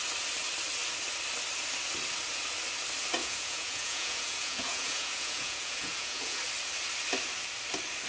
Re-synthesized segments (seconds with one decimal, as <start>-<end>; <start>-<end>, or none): 3.2-6.4